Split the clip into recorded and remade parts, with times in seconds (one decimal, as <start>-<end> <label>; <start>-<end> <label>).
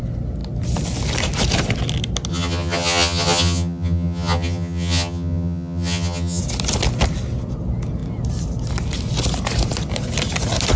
0.0-2.3 recorded; 2.3-6.4 remade; 6.4-10.8 recorded